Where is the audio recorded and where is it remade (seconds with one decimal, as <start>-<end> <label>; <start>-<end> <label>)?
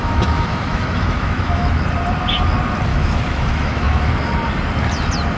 0.0-1.6 remade; 1.6-2.9 recorded; 2.9-4.1 remade; 4.1-5.4 recorded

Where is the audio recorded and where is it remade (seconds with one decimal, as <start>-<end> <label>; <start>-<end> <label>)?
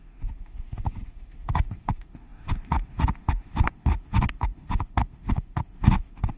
0.0-6.4 remade